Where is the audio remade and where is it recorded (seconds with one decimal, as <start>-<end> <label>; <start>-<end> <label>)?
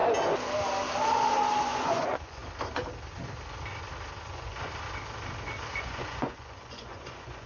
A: 0.0-1.6 recorded; 1.6-2.4 remade; 2.4-4.3 recorded; 4.3-4.7 remade; 4.7-5.8 recorded; 5.8-7.5 remade